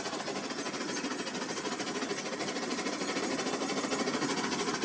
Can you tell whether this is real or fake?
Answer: real